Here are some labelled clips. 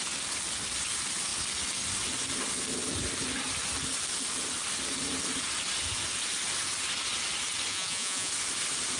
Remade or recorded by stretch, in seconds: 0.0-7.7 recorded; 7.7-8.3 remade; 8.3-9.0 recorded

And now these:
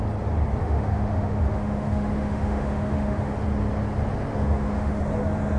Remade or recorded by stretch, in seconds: 0.0-0.6 recorded; 0.6-3.3 remade; 3.3-4.3 recorded; 4.3-5.0 remade; 5.0-5.6 recorded

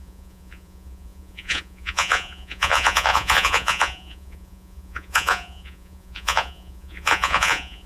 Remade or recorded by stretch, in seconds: 0.0-7.9 remade

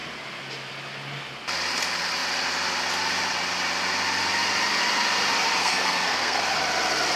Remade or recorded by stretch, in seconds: 0.0-5.6 recorded; 5.6-6.4 remade; 6.4-7.2 recorded

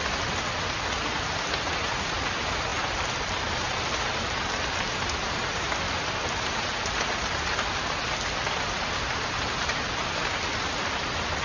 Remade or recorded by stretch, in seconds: 0.0-11.4 recorded

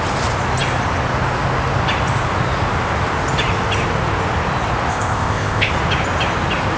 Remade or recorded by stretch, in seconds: 0.0-4.9 recorded; 4.9-5.7 remade; 5.7-6.8 recorded

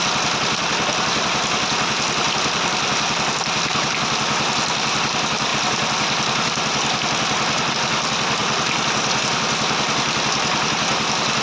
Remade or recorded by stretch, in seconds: 0.0-8.4 recorded; 8.4-9.2 remade; 9.2-11.4 recorded

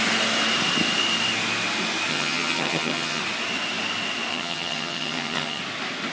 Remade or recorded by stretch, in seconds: 0.0-2.1 recorded; 2.1-3.2 remade; 3.2-4.3 recorded; 4.3-5.6 remade; 5.6-6.1 recorded